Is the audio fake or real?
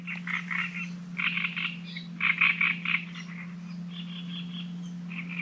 real